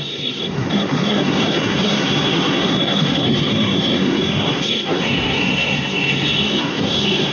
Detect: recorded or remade remade